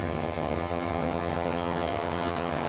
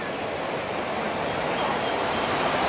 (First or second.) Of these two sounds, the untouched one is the second